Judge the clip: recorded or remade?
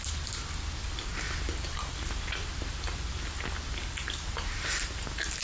recorded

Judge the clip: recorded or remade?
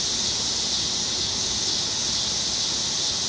recorded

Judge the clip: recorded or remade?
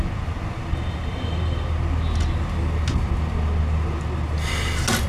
recorded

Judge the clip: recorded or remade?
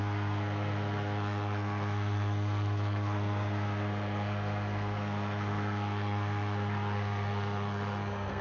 remade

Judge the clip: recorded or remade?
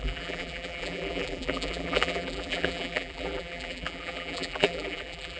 remade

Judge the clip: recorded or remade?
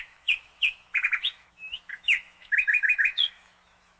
remade